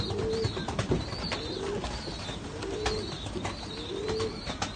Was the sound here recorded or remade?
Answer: recorded